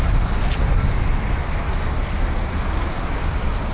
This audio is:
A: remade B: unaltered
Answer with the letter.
B